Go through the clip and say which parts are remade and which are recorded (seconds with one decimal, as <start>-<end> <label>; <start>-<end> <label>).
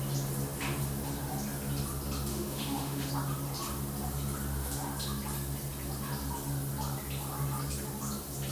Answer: 0.0-2.3 recorded; 2.3-3.1 remade; 3.1-8.5 recorded